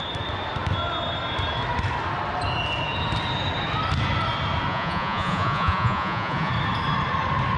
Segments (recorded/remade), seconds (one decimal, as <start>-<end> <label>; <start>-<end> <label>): 0.0-4.7 recorded; 4.7-6.5 remade; 6.5-7.6 recorded